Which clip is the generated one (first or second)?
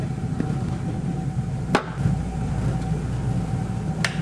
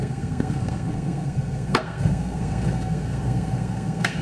second